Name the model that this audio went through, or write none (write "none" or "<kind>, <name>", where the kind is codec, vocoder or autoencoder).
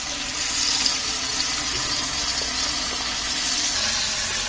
none